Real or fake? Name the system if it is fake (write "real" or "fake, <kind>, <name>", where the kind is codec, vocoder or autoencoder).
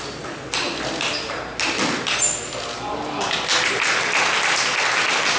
real